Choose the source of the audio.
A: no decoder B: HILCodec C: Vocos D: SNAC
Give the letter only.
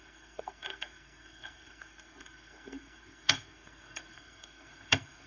D